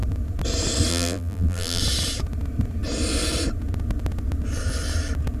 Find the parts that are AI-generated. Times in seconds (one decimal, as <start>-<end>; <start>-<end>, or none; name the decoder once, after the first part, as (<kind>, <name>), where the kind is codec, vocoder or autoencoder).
0.9-1.8 (vocoder, BigVGAN v2)